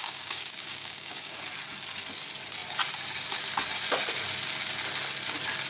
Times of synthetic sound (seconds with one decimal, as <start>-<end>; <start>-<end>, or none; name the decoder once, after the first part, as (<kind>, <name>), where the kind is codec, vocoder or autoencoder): 0.0-1.4 (codec, DAC)